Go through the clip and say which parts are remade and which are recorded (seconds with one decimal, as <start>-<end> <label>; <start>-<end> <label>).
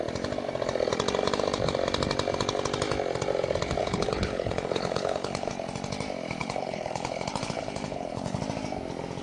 0.0-3.8 recorded; 3.8-5.5 remade; 5.5-6.4 recorded; 6.4-8.4 remade; 8.4-9.2 recorded